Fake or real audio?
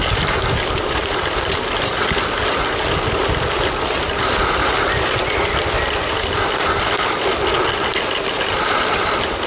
real